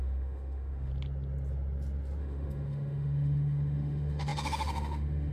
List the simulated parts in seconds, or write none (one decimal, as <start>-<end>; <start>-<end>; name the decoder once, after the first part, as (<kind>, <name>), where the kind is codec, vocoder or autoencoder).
0.0-0.9 (autoencoder, DAC-VAE); 2.2-5.3